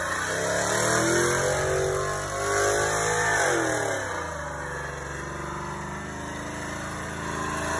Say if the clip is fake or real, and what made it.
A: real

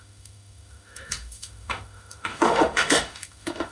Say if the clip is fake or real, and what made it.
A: fake, autoencoder, DAC-VAE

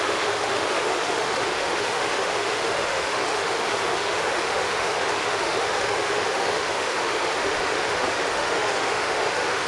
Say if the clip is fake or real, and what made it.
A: fake, autoencoder, DAC-VAE